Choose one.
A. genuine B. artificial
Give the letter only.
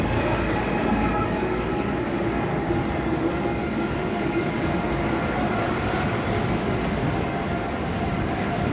B